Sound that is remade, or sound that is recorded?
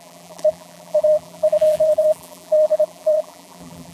remade